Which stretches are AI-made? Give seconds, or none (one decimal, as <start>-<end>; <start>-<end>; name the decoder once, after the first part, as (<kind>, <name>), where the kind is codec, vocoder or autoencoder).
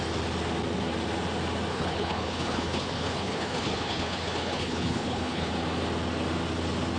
1.7-5.5 (codec, HILCodec)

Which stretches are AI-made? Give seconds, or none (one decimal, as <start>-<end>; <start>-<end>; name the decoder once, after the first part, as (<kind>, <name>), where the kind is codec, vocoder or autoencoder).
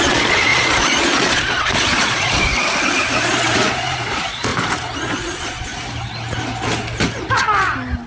0.0-2.5 (vocoder, Vocos); 3.3-4.5; 5.0-5.7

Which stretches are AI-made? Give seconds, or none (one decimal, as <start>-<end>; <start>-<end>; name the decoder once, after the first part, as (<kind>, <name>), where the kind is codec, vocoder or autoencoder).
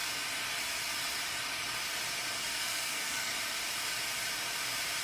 2.5-3.3 (codec, SNAC)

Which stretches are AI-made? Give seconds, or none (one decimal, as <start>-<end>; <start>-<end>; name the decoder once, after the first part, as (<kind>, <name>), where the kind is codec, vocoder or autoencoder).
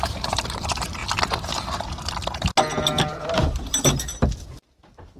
0.0-1.0 (vocoder, BigVGAN v2); 3.0-4.1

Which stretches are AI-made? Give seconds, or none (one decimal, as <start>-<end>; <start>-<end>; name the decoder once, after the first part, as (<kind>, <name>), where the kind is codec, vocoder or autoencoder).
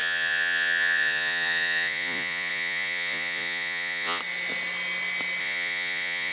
0.0-4.2 (vocoder, Vocos); 5.4-6.3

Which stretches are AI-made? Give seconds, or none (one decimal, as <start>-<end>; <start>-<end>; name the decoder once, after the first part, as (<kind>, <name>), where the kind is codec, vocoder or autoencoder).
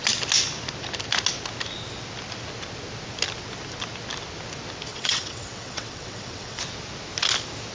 4.9-6.6 (vocoder, WaveNeXt)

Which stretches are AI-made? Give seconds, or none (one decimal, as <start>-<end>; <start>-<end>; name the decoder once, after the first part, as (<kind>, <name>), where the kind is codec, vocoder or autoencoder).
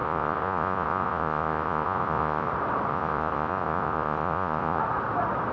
0.0-2.5 (vocoder, Vocos); 2.9-4.8